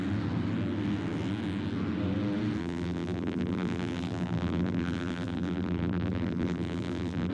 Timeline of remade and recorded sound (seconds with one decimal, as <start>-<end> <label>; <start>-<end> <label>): 0.0-2.6 recorded; 2.6-7.3 remade